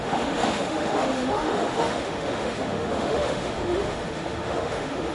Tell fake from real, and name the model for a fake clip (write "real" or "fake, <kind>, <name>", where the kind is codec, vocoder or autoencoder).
fake, autoencoder, DAC-VAE